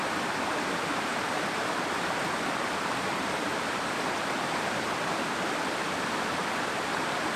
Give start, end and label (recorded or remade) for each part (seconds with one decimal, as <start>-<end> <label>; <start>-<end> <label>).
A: 0.0-7.4 recorded